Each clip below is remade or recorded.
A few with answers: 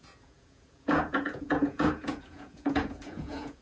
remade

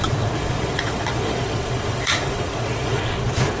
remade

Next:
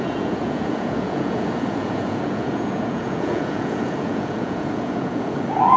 remade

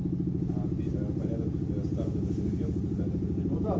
recorded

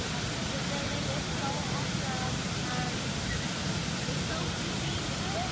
recorded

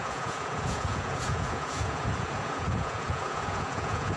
remade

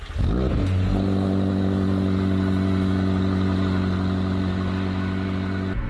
recorded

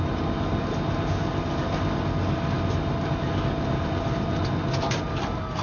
recorded